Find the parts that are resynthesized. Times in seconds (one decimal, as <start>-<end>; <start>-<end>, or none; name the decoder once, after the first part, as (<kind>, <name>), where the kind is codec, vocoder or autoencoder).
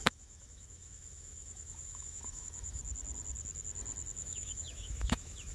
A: 0.0-2.8 (autoencoder, DAC-VAE); 4.2-5.5